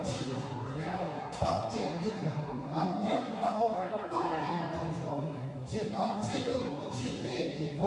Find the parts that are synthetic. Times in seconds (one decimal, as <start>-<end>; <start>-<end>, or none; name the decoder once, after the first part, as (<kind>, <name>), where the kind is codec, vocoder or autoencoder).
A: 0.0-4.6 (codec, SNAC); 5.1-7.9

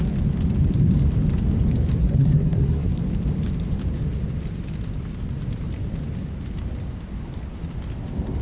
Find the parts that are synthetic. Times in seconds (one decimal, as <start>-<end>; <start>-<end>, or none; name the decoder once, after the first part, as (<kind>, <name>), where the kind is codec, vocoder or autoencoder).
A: 2.0-3.0 (codec, SNAC)

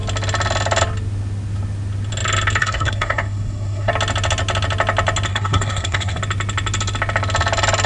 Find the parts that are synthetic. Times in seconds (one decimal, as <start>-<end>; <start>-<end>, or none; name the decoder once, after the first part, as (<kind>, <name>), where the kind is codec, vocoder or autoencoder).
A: 2.6-3.9 (codec, SNAC); 5.3-6.2

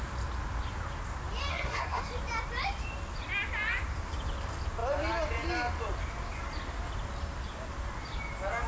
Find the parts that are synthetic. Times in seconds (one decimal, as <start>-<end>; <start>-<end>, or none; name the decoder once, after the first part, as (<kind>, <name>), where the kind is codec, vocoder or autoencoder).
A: 1.5-2.0 (codec, SNAC)